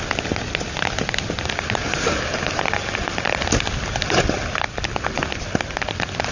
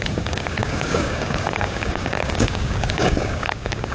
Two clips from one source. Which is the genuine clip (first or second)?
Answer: first